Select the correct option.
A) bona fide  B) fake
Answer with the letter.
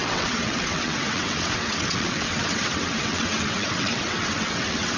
B